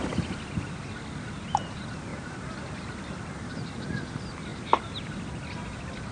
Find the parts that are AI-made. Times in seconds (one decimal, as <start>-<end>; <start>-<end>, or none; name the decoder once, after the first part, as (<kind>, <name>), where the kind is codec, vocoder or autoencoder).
2.1-3.2 (vocoder, BigVGAN v2)